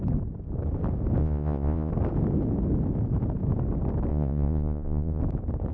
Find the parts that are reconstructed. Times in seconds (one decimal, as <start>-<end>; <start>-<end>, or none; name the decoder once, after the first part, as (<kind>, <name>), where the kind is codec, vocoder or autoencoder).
1.2-1.9 (vocoder, Vocos); 4.1-5.2

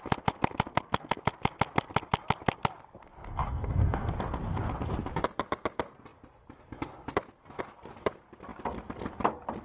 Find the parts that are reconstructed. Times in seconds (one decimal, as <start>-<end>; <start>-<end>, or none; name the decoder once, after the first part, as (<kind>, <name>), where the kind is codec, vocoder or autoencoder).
0.7-1.2 (codec, SNAC); 3.3-4.1

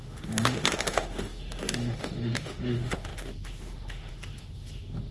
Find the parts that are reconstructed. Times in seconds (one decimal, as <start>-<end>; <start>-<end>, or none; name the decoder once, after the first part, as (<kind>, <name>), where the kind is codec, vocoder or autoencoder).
0.0-5.1 (autoencoder, DAC-VAE)

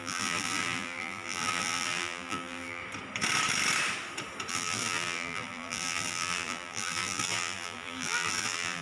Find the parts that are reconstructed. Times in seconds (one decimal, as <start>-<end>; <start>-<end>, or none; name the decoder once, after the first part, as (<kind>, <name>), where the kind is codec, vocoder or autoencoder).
0.0-2.8 (vocoder, BigVGAN v2); 4.5-8.8